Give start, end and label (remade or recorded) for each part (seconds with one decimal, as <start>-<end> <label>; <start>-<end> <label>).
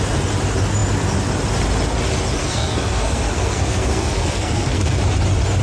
0.0-2.4 recorded; 2.4-5.0 remade; 5.0-5.6 recorded